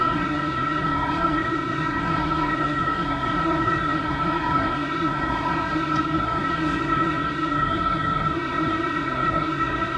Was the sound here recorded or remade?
remade